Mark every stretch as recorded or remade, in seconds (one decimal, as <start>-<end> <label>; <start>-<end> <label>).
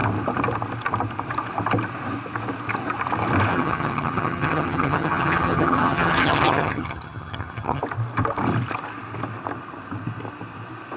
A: 0.0-3.5 recorded; 3.5-7.8 remade; 7.8-11.0 recorded